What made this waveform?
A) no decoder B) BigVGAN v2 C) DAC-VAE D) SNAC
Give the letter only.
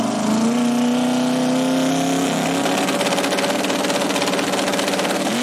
A